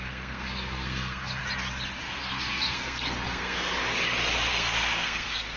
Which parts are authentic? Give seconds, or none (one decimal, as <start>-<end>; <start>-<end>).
1.4-2.0; 3.7-4.5